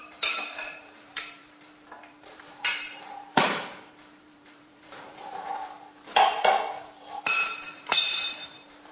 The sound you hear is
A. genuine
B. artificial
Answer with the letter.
B